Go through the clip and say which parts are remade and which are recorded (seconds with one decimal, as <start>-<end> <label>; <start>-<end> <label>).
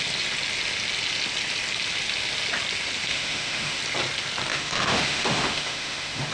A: 0.0-3.1 recorded; 3.1-3.8 remade; 3.8-4.5 recorded; 4.5-6.3 remade